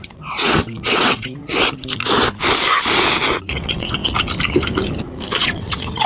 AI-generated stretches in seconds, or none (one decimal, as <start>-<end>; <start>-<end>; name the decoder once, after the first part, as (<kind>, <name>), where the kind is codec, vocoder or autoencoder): 0.0-1.4 (vocoder, WaveNeXt); 3.4-4.0; 5.4-6.1